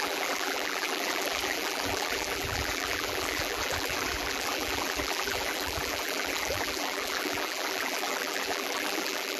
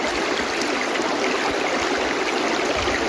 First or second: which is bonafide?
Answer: second